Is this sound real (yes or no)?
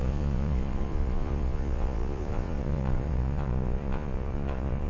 no